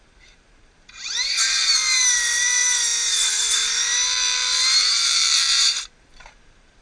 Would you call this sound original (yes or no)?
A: no